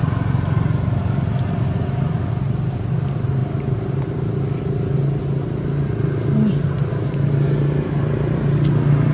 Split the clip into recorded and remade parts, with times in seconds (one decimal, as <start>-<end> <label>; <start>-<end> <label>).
0.0-9.1 recorded